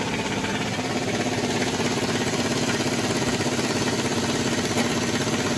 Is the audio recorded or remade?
recorded